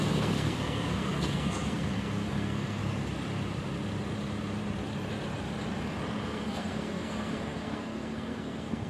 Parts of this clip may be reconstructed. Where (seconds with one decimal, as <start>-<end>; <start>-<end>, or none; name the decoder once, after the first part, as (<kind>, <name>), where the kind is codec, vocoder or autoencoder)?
0.0-2.8 (codec, SNAC); 6.2-8.9